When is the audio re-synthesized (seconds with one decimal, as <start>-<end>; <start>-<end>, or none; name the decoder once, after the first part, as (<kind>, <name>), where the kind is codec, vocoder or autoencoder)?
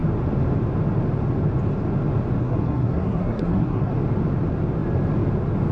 2.4-3.9 (codec, SNAC)